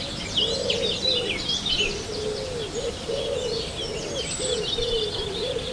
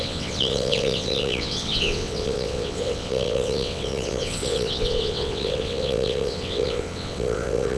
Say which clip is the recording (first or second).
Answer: first